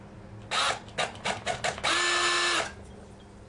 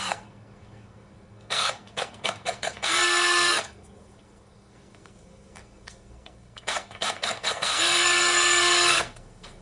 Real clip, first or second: first